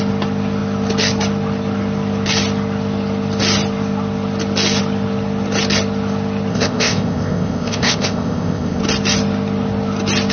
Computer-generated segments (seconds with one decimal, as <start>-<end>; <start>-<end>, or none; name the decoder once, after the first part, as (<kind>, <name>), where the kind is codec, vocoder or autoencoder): 6.5-8.8 (codec, ZipCodec)